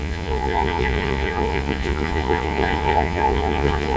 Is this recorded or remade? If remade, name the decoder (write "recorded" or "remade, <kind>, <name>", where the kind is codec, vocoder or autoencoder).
remade, vocoder, Vocos